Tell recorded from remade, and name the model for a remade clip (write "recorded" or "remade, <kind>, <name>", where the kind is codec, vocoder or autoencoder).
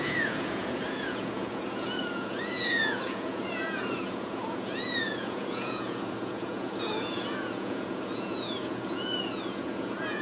remade, vocoder, Vocos